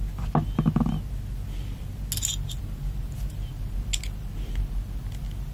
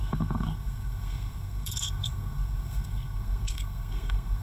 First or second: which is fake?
second